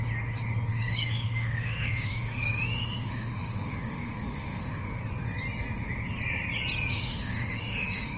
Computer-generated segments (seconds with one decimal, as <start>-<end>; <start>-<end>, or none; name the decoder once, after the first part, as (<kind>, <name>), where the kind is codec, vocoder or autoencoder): 0.7-5.0 (autoencoder, DAC-VAE); 6.9-8.2